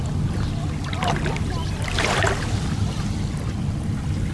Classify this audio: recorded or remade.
recorded